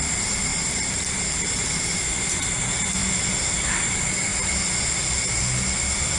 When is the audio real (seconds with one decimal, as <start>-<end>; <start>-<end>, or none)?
0.0-0.5; 2.6-3.0; 3.7-6.2